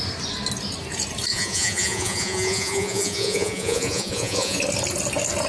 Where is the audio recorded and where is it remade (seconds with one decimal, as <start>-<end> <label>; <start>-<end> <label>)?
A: 0.0-1.3 recorded; 1.3-4.6 remade; 4.6-5.5 recorded